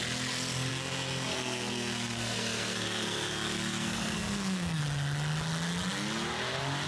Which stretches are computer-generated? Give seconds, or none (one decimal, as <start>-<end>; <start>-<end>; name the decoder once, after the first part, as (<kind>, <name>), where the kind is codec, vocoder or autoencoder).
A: 0.7-4.8 (codec, SNAC)